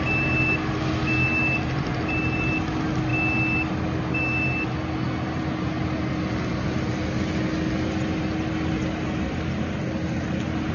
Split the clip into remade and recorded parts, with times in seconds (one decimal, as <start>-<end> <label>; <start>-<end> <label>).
0.0-10.7 recorded